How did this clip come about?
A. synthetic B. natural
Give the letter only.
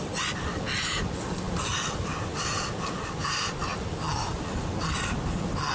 B